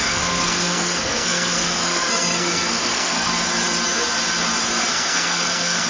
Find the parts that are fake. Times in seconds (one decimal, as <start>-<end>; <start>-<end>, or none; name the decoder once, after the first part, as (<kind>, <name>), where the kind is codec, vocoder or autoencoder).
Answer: 0.0-3.3 (codec, SNAC); 4.9-5.9